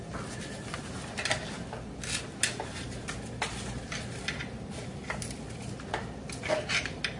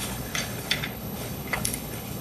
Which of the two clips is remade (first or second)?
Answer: second